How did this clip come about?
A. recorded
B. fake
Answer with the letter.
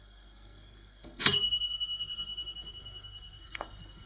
B